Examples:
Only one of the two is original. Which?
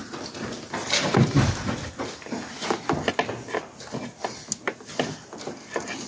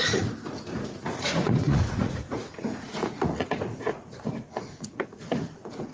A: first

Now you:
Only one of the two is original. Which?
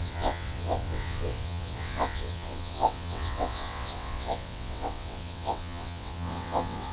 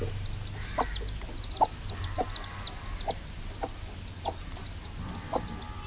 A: second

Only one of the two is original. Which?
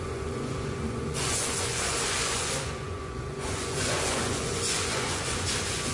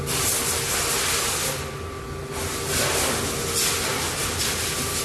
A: second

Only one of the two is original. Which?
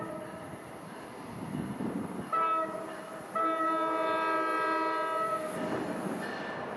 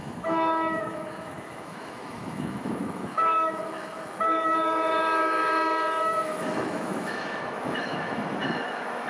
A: first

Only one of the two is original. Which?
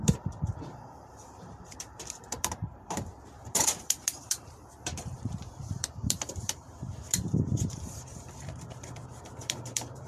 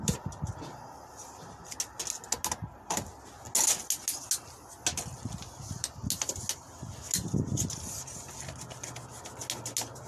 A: second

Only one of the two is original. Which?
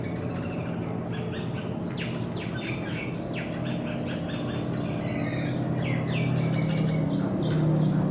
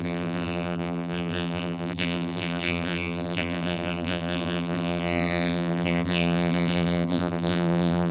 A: first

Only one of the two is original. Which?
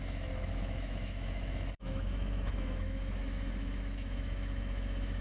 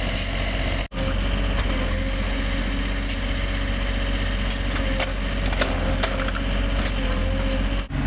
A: second